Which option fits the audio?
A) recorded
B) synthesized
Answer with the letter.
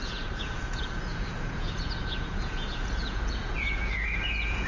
B